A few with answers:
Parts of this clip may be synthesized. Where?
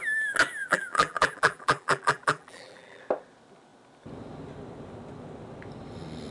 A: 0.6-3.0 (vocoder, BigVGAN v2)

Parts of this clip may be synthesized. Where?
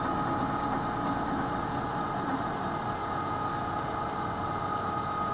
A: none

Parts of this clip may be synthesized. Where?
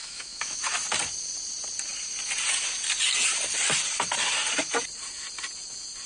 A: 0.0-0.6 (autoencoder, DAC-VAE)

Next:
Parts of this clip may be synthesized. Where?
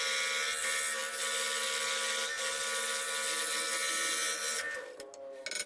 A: none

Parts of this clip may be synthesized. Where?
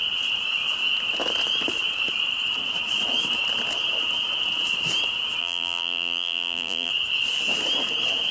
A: 5.4-6.9 (vocoder, BigVGAN v2)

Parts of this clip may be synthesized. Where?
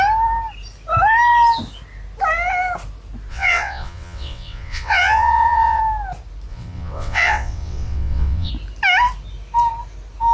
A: 3.3-5.8 (vocoder, WaveNeXt); 6.5-8.5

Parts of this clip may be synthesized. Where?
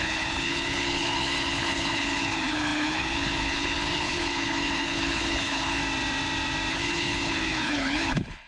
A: 0.0-5.8 (codec, HILCodec); 6.7-8.5